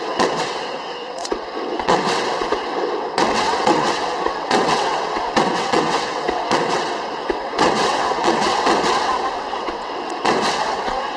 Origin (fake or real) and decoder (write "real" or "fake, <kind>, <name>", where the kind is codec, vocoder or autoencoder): fake, vocoder, WaveNeXt